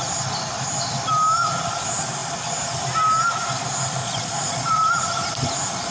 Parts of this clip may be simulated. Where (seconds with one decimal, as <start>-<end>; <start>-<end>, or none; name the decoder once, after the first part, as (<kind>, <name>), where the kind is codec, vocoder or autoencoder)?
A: 4.0-4.9 (vocoder, Vocos)